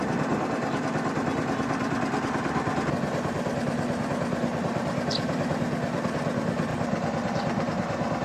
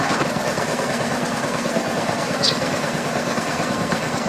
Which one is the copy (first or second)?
second